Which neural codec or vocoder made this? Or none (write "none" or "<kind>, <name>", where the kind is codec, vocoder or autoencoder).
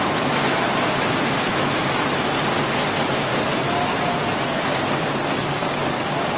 none